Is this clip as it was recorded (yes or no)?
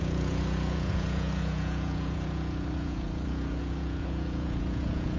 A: no